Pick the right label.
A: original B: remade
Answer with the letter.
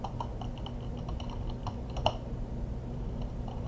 A